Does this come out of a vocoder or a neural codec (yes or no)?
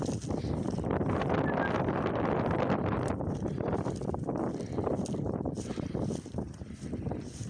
yes